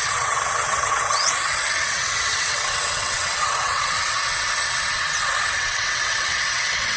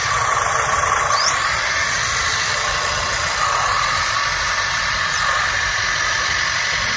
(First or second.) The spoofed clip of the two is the first